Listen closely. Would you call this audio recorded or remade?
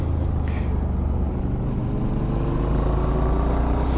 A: recorded